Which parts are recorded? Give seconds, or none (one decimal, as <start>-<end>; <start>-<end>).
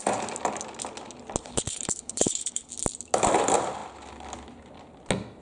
0.0-1.4; 2.7-5.4